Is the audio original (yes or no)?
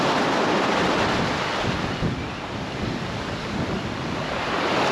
yes